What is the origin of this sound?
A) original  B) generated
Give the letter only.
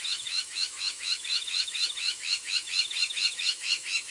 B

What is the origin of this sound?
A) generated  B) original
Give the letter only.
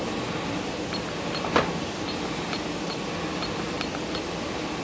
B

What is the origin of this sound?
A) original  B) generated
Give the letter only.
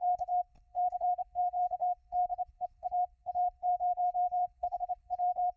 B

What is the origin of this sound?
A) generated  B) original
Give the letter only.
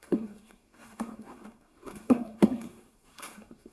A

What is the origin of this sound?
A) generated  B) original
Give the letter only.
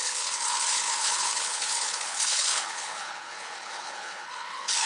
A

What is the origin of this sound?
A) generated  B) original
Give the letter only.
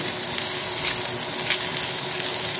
B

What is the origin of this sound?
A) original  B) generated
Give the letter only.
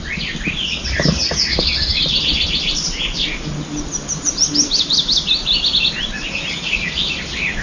A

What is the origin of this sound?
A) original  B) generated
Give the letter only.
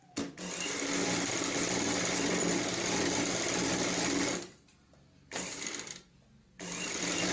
A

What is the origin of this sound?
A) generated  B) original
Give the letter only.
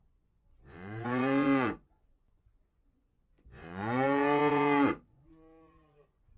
A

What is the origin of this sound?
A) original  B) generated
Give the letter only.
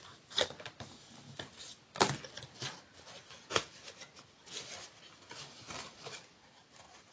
A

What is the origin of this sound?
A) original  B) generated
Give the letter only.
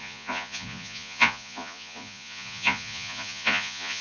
B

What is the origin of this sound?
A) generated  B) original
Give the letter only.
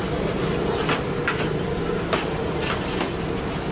B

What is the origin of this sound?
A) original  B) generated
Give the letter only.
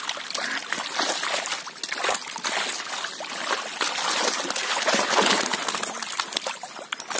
A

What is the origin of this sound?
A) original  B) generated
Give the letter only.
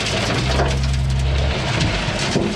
A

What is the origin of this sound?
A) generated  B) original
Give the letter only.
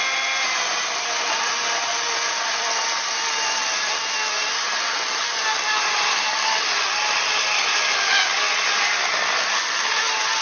B